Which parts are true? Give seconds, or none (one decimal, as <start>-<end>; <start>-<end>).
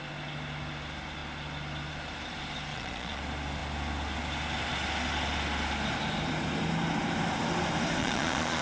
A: 0.0-2.7; 3.2-8.0